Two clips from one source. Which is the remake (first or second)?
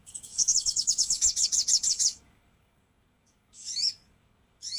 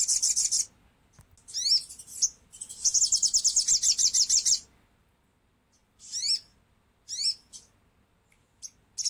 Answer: first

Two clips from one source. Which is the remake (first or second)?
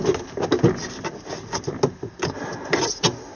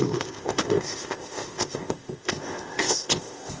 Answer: second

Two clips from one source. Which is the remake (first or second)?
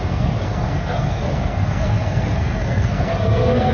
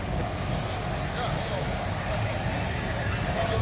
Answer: first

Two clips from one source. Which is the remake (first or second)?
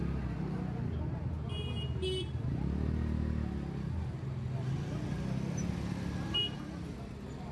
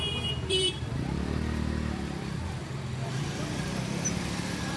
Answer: second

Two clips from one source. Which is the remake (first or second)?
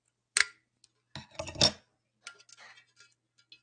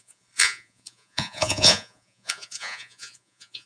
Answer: second